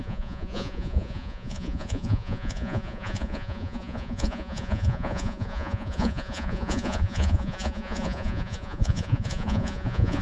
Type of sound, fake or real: fake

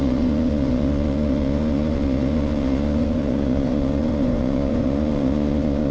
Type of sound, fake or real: fake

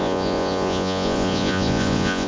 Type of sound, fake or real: fake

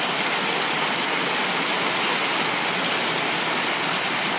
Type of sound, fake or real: real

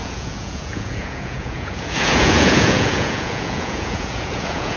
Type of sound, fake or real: fake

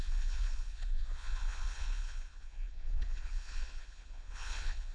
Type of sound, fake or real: fake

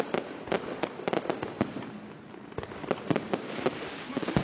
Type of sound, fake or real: real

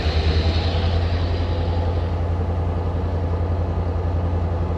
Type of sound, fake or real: real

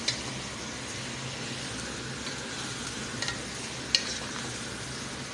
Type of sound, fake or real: real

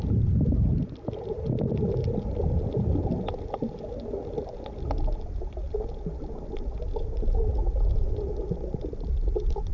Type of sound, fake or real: real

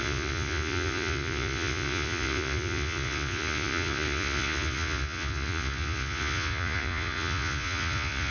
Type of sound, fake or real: fake